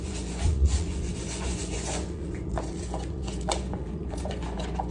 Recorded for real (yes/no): no